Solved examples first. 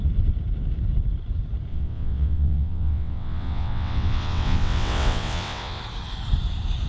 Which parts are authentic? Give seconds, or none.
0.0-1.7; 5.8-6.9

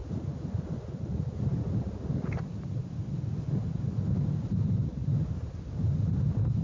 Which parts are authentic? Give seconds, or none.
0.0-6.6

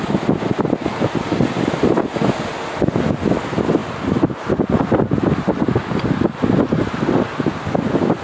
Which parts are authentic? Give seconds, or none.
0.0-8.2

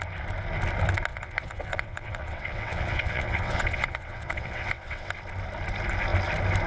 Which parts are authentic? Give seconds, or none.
0.0-1.1; 5.1-6.7

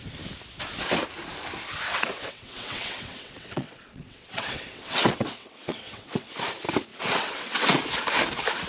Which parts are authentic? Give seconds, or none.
0.0-1.9; 6.3-6.9; 7.8-8.7

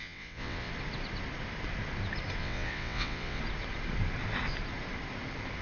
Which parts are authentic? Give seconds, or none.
0.7-2.4; 3.4-5.6

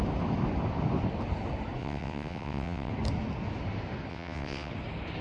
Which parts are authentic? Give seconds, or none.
0.0-1.8; 2.9-4.1; 4.7-5.2